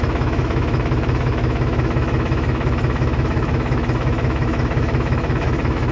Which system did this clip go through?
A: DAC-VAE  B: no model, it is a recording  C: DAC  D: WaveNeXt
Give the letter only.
A